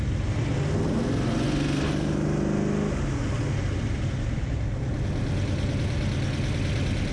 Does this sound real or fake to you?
real